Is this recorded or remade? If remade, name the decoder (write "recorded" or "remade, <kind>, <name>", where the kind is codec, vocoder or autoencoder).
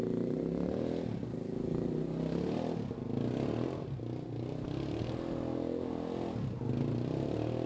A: recorded